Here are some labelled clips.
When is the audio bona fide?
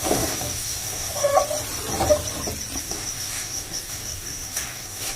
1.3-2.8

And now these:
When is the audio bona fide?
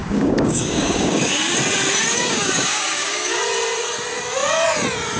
1.4-2.1; 3.4-5.2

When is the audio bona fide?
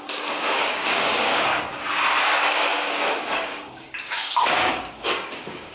1.5-2.2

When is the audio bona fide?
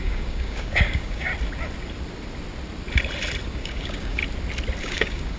1.3-3.5; 4.2-4.8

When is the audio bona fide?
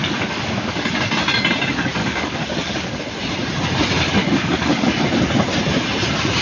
0.9-2.0; 3.0-4.2; 5.0-6.4